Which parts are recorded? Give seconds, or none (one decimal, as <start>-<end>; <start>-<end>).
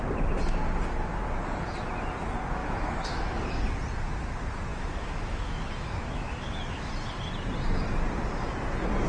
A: 0.0-2.6; 3.6-4.7; 6.9-9.1